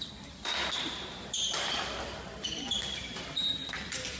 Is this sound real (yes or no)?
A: no